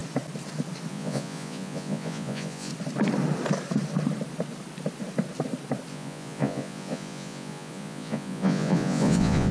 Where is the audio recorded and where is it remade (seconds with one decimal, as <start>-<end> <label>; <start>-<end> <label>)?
0.0-0.9 recorded; 0.9-2.7 remade; 2.7-5.9 recorded; 5.9-9.5 remade